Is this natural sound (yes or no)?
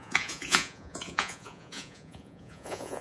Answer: no